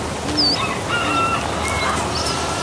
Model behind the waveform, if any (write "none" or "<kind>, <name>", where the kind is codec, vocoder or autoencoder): none